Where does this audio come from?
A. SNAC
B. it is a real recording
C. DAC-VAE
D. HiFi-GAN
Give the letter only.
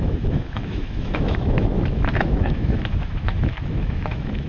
C